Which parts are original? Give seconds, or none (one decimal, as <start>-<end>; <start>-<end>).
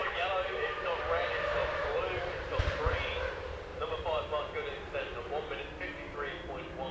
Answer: 1.0-1.6; 2.8-3.7; 4.4-6.9